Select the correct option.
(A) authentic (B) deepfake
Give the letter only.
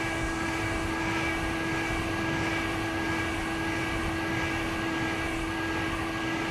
A